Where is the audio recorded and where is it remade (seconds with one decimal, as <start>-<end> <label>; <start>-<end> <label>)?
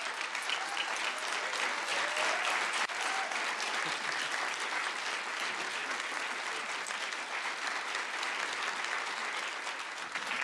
0.0-1.9 recorded; 1.9-4.2 remade; 4.2-10.4 recorded